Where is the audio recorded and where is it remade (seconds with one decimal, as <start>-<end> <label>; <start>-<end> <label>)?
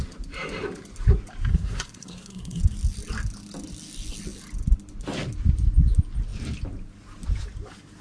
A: 0.0-1.5 recorded; 1.5-2.6 remade; 2.6-8.0 recorded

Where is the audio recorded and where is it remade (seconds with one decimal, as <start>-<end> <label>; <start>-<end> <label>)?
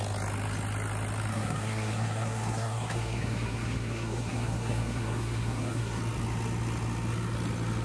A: 0.0-1.3 recorded; 1.3-6.0 remade; 6.0-7.8 recorded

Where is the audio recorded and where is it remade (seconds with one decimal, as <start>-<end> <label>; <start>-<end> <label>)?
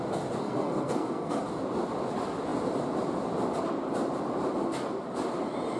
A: 0.0-0.4 recorded; 0.4-1.4 remade; 1.4-5.8 recorded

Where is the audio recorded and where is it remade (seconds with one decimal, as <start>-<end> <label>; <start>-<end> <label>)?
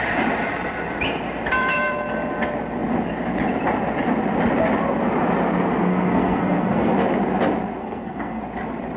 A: 0.0-5.8 recorded; 5.8-6.9 remade; 6.9-7.8 recorded; 7.8-8.4 remade; 8.4-9.0 recorded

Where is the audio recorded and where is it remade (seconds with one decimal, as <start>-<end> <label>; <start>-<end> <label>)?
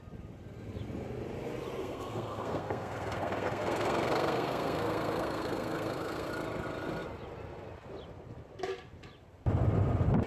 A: 0.0-1.8 recorded; 1.8-6.3 remade; 6.3-10.3 recorded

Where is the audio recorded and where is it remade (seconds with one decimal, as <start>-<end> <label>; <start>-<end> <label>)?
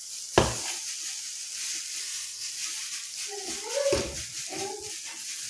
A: 0.0-2.0 recorded; 2.0-2.5 remade; 2.5-5.5 recorded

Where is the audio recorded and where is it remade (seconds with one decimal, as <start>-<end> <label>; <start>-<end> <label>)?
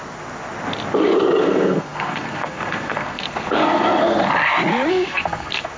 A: 0.0-1.4 recorded; 1.4-4.2 remade; 4.2-4.9 recorded; 4.9-5.8 remade